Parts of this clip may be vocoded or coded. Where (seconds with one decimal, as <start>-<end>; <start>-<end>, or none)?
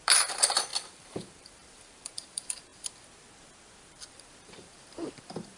0.0-2.7; 3.8-5.6